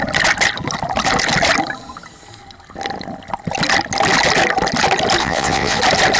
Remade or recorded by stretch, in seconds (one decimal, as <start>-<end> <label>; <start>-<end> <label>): 0.0-5.2 recorded; 5.2-5.8 remade; 5.8-6.2 recorded